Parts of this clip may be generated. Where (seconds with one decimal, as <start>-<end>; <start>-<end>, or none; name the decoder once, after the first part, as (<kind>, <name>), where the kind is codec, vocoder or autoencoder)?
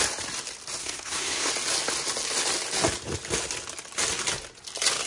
0.8-1.5 (codec, SNAC)